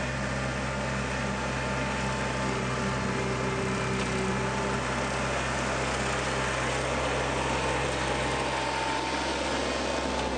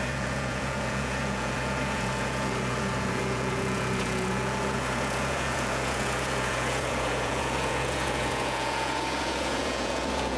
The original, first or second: first